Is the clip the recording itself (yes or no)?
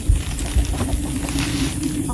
yes